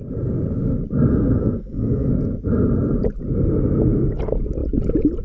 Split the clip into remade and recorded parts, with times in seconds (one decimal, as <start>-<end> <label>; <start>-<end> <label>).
0.0-1.1 recorded; 1.1-2.1 remade; 2.1-5.2 recorded